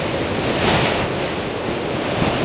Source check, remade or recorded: recorded